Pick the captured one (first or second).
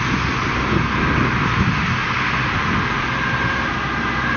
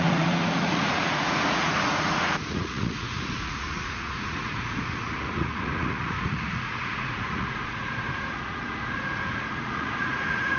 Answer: first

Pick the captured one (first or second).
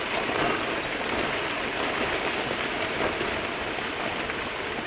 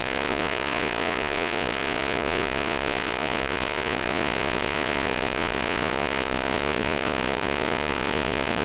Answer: first